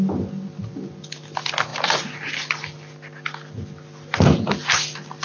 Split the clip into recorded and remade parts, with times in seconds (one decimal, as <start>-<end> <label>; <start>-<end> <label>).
0.0-5.2 recorded